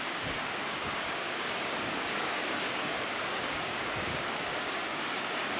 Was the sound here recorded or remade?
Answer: remade